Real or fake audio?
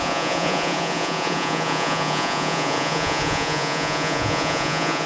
fake